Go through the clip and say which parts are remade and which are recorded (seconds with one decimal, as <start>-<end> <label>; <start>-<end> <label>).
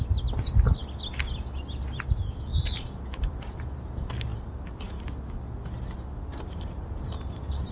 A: 0.0-2.5 recorded; 2.5-3.9 remade; 3.9-4.3 recorded; 4.3-5.0 remade; 5.0-6.3 recorded; 6.3-7.7 remade